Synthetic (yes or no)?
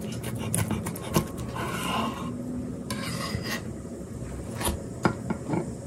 no